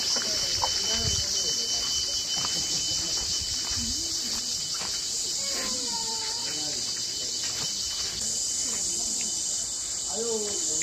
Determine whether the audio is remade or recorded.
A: recorded